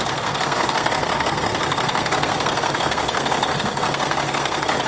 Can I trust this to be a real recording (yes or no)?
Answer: no